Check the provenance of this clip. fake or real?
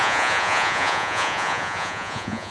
fake